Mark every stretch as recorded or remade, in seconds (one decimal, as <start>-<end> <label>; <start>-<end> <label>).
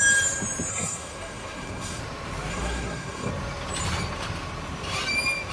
0.0-0.7 recorded; 0.7-2.0 remade; 2.0-2.5 recorded; 2.5-3.3 remade; 3.3-5.5 recorded